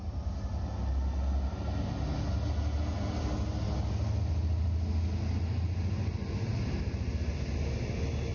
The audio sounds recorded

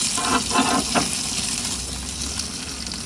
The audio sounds recorded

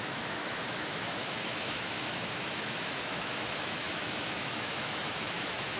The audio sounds remade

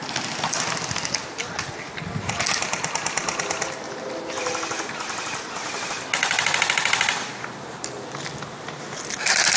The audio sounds recorded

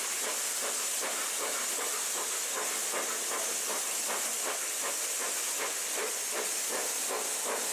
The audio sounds recorded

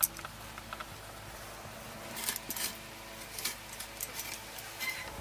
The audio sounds recorded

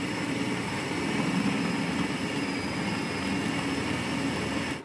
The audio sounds recorded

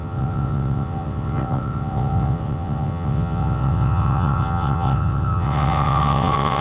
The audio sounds remade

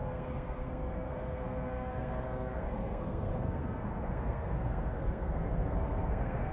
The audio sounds remade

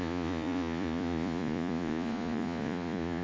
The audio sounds remade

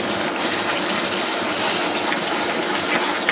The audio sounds recorded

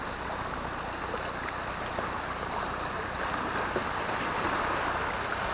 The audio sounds recorded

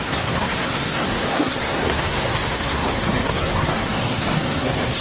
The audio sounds remade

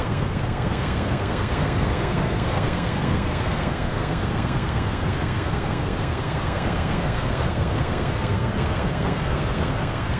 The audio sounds remade